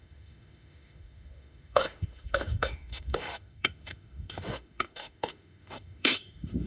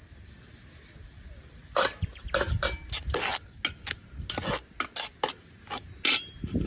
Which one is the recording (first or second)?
second